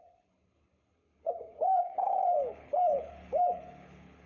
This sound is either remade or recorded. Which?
remade